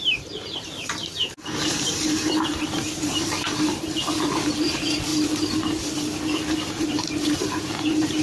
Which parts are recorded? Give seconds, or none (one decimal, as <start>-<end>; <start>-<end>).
5.1-6.7